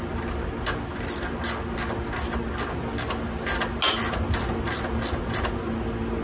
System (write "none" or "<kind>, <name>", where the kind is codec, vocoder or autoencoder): none